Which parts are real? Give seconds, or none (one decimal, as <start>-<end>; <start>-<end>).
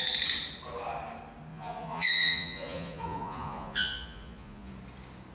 0.0-1.5; 4.7-5.3